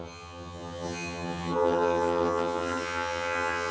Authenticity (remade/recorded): remade